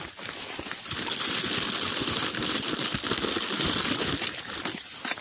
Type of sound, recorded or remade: recorded